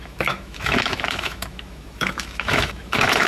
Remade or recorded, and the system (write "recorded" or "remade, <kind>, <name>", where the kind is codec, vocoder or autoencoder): remade, autoencoder, DAC-VAE